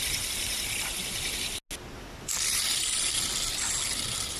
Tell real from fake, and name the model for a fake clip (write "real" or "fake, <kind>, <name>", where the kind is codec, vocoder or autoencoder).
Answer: real